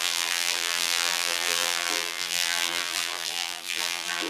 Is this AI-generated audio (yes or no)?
yes